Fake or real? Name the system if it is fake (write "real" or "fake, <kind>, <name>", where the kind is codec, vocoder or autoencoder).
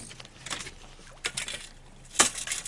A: real